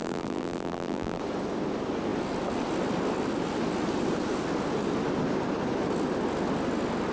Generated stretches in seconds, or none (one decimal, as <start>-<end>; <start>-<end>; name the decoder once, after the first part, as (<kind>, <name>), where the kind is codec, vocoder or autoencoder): 0.0-1.2 (vocoder, BigVGAN v2)

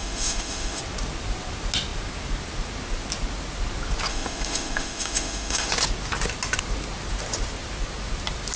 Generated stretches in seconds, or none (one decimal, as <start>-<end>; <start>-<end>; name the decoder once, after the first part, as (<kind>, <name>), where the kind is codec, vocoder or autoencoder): 0.0-0.8 (autoencoder, DAC-VAE); 4.1-5.7

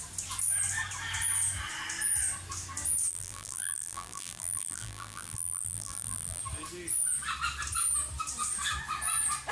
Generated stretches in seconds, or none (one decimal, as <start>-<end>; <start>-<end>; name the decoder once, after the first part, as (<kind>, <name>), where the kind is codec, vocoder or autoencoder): 3.1-6.4 (vocoder, BigVGAN v2)

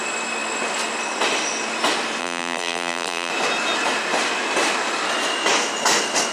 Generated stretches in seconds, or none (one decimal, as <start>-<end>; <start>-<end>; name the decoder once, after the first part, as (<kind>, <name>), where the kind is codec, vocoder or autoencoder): 2.2-3.3 (vocoder, BigVGAN v2)

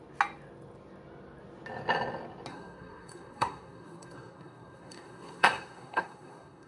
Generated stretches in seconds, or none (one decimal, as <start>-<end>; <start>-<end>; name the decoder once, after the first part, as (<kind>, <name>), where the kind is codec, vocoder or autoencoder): 2.5-6.7 (codec, SNAC)